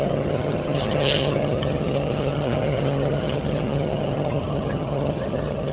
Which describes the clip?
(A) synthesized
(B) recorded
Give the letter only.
A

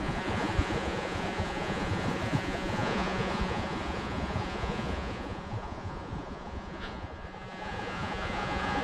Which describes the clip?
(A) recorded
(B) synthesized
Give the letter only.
B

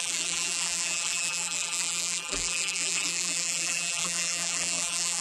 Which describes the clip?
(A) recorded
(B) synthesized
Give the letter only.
B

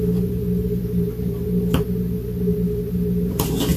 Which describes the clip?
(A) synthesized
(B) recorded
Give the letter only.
B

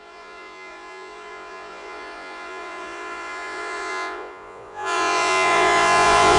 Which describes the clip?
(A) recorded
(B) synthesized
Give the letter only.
B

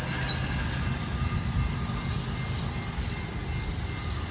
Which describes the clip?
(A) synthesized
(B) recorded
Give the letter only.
B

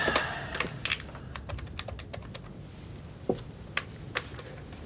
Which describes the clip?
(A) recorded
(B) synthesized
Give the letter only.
A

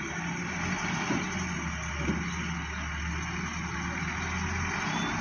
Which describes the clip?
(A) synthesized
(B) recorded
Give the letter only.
B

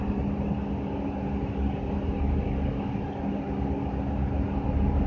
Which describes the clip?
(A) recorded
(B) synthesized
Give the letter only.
A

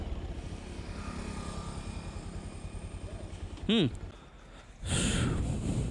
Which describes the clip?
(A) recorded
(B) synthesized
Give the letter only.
A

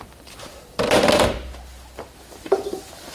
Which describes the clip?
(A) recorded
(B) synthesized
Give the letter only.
B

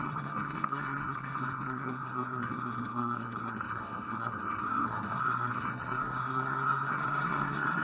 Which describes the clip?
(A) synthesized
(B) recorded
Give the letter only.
A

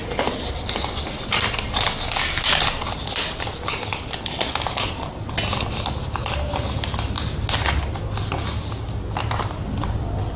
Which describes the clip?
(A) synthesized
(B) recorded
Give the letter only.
B